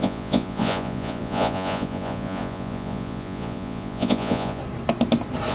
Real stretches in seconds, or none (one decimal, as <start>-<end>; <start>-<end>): 4.6-5.5